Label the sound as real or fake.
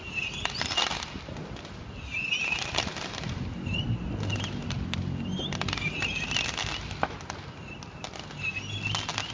real